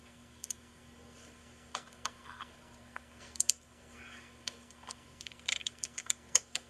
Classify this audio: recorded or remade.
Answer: remade